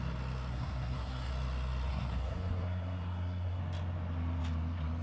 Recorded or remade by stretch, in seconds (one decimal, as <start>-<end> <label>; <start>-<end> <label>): 0.0-0.5 recorded; 0.5-1.3 remade; 1.3-1.9 recorded; 1.9-3.6 remade; 3.6-5.0 recorded